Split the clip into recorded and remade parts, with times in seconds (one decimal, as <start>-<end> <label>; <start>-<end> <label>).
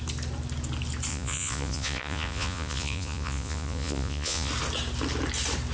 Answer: 0.0-1.1 recorded; 1.1-4.5 remade; 4.5-5.7 recorded